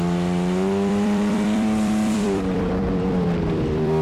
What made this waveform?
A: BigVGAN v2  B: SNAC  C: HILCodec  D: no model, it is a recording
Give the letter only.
A